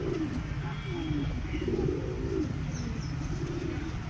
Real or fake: fake